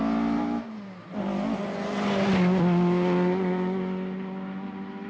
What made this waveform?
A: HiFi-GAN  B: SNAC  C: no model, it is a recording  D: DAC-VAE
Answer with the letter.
C